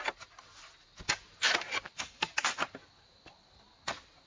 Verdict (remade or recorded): recorded